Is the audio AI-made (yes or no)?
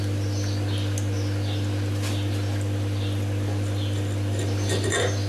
no